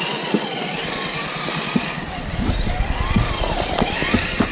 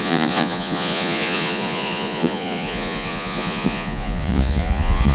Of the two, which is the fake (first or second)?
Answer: second